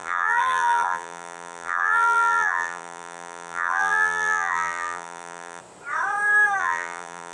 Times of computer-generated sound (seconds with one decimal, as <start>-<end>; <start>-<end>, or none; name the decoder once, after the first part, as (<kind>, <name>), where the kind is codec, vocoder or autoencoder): 0.0-5.6 (vocoder, BigVGAN v2); 6.6-7.3